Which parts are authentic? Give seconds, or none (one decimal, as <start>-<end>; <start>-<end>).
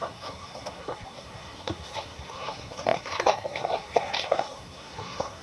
none